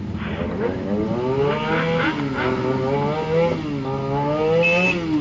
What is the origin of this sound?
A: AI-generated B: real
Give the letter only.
B